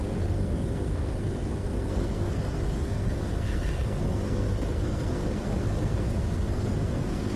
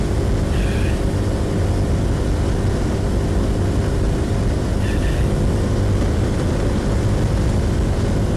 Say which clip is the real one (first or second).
second